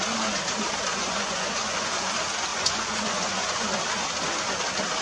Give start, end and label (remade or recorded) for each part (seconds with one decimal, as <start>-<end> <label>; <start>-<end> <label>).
0.0-0.9 recorded; 0.9-2.1 remade; 2.1-2.5 recorded; 2.5-3.7 remade; 3.7-5.0 recorded